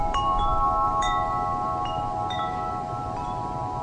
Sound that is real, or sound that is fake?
fake